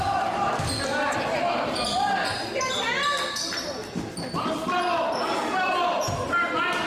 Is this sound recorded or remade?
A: recorded